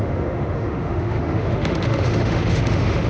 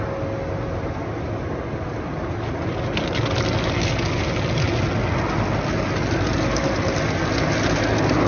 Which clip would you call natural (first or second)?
second